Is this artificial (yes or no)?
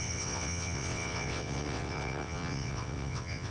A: yes